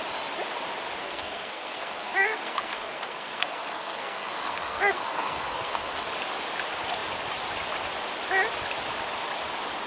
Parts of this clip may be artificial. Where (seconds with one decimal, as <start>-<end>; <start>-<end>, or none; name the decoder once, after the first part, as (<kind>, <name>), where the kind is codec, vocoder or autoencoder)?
1.0-6.1 (codec, SNAC)

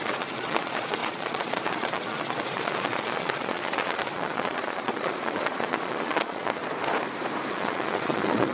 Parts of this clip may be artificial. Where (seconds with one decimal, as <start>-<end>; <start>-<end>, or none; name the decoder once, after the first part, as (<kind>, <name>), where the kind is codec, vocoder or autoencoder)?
0.0-6.6 (vocoder, Vocos); 7.5-8.5

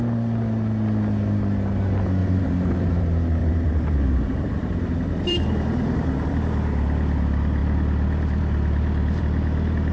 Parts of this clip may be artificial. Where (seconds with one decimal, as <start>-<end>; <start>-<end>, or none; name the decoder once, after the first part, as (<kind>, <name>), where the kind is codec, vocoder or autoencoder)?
2.2-3.0 (vocoder, BigVGAN v2); 3.4-6.3